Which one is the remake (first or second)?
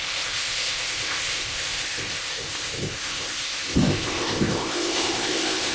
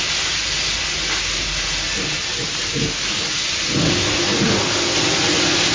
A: first